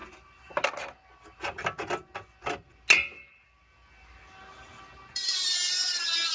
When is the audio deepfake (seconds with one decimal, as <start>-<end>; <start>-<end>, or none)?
none